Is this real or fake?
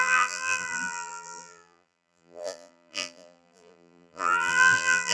fake